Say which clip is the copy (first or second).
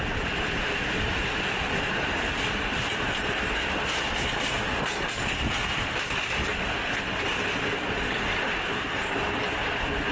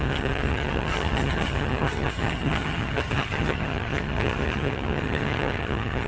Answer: second